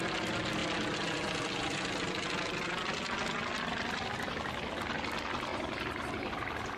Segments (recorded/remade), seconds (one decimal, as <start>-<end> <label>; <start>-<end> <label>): 0.0-5.5 recorded; 5.5-6.3 remade; 6.3-6.8 recorded